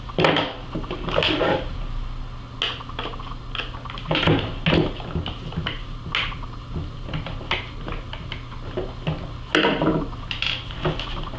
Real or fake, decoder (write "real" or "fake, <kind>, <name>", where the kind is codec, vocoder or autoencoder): real